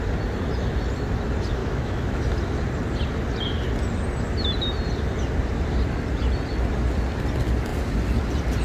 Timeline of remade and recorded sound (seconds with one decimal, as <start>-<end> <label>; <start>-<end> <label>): 0.0-1.6 recorded; 1.6-2.2 remade; 2.2-8.6 recorded